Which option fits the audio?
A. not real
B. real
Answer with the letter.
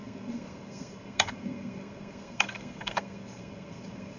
A